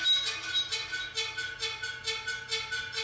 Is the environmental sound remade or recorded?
recorded